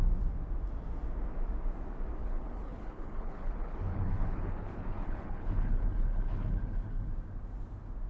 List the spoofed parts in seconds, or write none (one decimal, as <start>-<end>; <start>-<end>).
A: 2.2-7.1